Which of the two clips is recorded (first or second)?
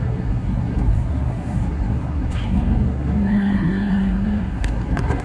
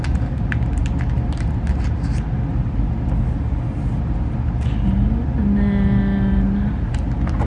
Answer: second